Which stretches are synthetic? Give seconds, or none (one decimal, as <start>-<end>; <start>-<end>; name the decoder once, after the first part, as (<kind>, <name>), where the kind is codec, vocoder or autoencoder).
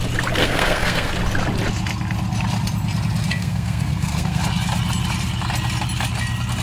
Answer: 0.4-1.1 (codec, SNAC); 3.3-4.4